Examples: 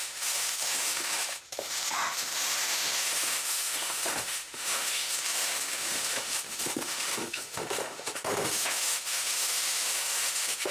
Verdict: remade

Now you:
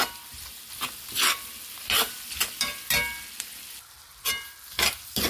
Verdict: recorded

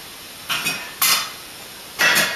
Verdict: recorded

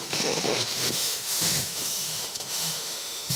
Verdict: remade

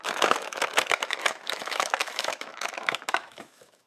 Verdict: remade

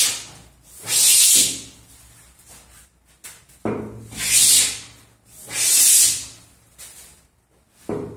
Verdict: recorded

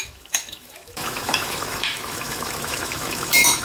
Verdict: remade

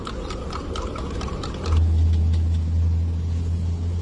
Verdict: recorded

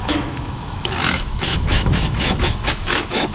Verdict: remade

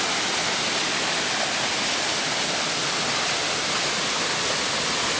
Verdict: recorded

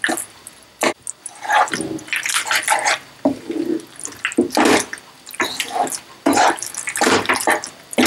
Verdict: recorded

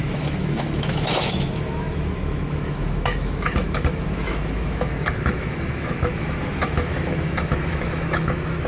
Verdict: remade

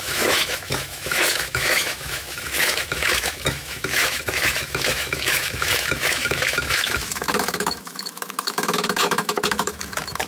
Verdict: remade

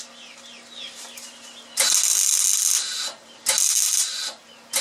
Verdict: recorded